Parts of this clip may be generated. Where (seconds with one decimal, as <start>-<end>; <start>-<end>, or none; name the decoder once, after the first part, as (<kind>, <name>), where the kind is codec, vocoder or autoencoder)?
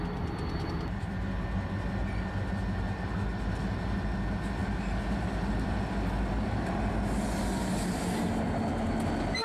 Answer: none